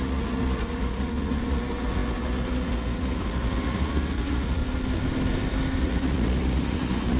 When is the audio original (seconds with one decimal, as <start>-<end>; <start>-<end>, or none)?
4.6-5.8

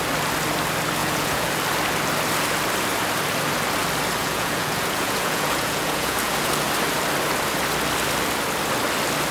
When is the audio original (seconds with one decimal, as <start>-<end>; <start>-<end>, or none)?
0.0-1.0; 1.5-4.2; 6.5-9.3

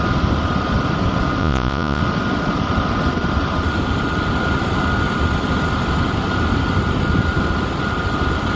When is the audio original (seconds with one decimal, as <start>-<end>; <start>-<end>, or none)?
0.0-1.4; 2.0-8.6

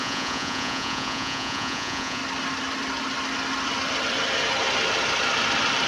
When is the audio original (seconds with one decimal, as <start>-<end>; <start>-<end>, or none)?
2.2-5.9

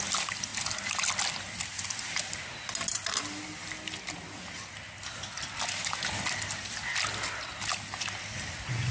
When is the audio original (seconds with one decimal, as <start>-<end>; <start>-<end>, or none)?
0.0-8.9

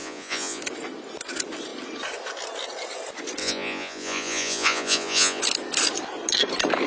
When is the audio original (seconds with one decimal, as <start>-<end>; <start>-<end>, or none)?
0.6-3.4; 5.4-6.9

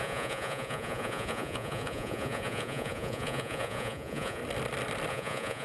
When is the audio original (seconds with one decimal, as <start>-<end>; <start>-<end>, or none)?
4.4-5.1

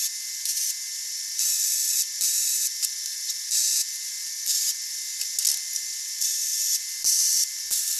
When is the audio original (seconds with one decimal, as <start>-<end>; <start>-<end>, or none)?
0.0-8.0